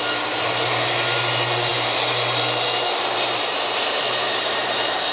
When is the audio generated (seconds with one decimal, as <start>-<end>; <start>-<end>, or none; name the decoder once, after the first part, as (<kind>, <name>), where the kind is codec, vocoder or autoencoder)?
1.7-5.1 (vocoder, BigVGAN v2)